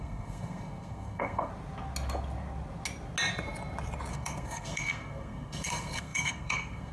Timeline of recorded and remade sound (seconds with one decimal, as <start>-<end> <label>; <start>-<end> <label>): 0.0-1.5 remade; 1.5-4.1 recorded; 4.1-6.9 remade